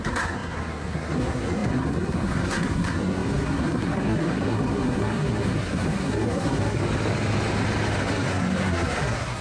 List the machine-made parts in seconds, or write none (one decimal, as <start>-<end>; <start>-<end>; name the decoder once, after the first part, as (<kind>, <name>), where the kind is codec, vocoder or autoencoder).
0.0-6.8 (codec, SNAC); 8.0-9.4